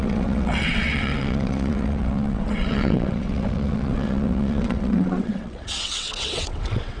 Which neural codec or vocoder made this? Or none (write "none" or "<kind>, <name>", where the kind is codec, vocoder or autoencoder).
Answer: vocoder, WaveNeXt